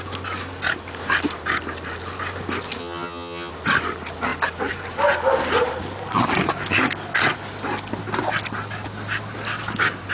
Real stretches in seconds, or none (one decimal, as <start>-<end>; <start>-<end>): 0.0-2.8; 3.5-10.1